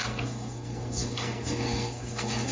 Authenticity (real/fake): fake